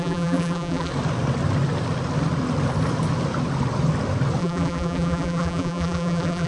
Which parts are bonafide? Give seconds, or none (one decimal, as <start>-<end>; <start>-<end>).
0.9-4.4